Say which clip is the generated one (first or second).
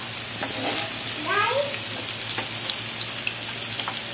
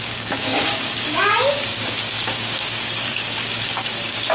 second